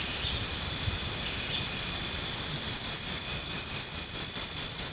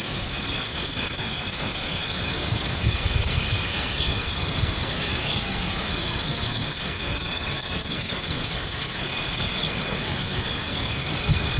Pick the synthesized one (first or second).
second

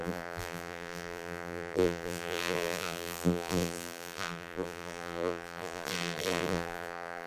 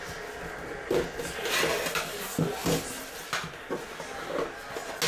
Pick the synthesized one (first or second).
first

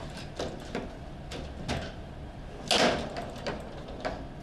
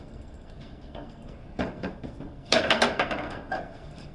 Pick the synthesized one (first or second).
second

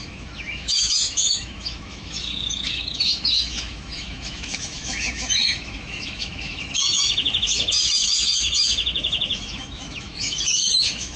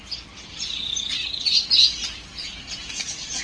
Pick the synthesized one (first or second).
first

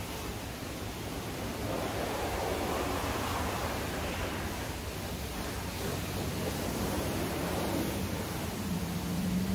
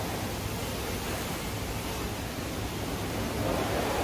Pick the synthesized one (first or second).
first